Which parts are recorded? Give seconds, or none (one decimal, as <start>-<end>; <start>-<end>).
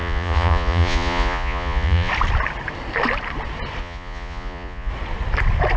2.1-3.8; 4.9-5.8